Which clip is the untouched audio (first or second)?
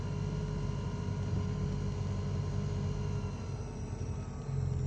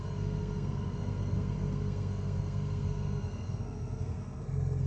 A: first